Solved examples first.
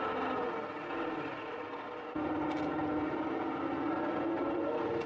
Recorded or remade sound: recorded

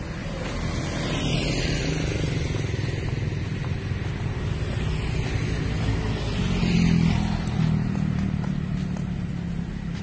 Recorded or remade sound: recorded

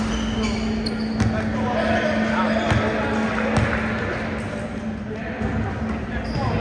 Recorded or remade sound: recorded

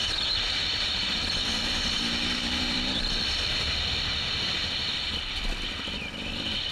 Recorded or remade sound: remade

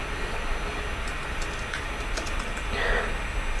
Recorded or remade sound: recorded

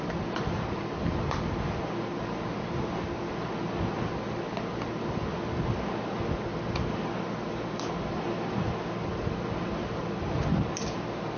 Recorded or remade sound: recorded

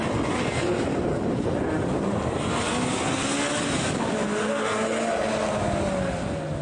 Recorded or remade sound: recorded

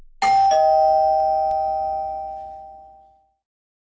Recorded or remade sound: recorded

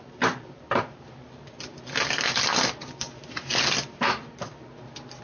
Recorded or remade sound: recorded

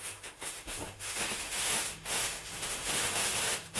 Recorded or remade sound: remade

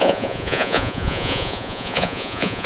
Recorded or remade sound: remade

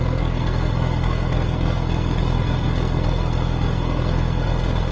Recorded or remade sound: remade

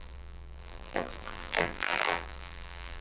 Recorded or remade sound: remade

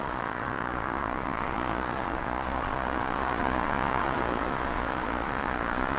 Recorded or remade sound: remade